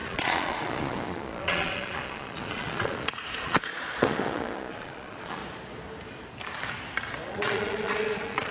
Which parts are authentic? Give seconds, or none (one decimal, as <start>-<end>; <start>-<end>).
5.4-7.3